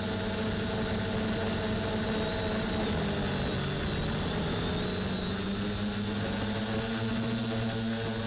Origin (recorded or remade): recorded